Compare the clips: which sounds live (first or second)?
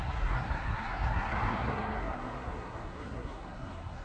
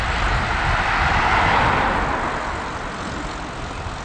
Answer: second